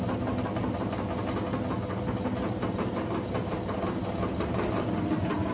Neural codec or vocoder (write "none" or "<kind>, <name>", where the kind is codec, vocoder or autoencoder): none